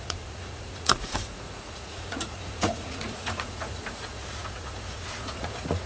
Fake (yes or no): yes